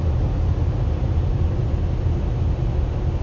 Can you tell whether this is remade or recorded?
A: recorded